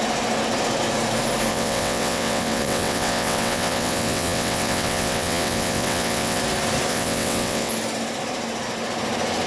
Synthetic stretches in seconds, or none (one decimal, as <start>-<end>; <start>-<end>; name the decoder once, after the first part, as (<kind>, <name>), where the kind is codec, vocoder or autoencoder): 1.5-6.4 (vocoder, WaveNeXt); 6.9-7.7

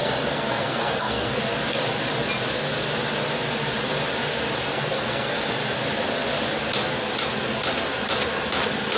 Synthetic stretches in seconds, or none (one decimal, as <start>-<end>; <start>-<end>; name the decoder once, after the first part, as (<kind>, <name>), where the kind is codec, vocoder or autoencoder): 0.0-1.4 (codec, SNAC); 4.7-5.5

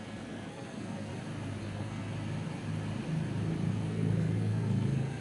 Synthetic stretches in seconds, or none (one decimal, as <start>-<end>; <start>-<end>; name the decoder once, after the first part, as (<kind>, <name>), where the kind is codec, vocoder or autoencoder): 0.0-1.1 (codec, SNAC); 1.6-2.1; 3.7-5.2

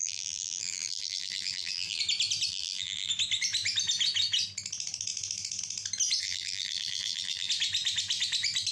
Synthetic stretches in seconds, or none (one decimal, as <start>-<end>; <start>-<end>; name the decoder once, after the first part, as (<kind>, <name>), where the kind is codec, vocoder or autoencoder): 0.0-2.0 (vocoder, BigVGAN v2); 2.5-3.1; 6.2-7.5

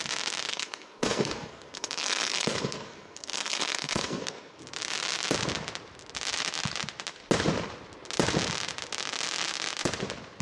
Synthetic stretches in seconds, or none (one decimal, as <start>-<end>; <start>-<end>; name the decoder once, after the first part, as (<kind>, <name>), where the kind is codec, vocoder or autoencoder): 0.5-4.6 (codec, SNAC)

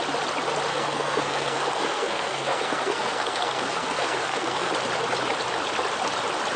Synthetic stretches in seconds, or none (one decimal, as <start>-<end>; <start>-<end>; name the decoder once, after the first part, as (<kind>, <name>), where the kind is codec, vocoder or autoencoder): 0.7-4.7 (codec, SNAC)

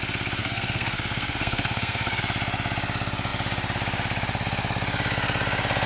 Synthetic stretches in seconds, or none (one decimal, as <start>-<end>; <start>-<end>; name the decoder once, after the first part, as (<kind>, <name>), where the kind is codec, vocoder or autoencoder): 0.4-2.2 (codec, SNAC)

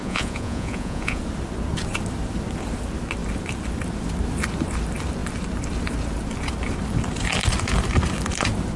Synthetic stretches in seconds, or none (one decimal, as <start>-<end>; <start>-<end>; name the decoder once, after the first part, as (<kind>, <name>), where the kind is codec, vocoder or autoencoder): 0.0-1.2 (vocoder, Vocos)